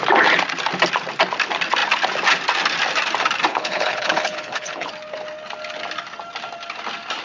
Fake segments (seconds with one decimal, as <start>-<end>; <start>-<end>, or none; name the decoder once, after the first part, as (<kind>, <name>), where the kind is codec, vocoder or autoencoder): 3.5-4.9 (codec, HILCodec)